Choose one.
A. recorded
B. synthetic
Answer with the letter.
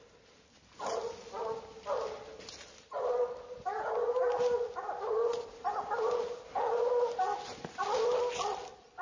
A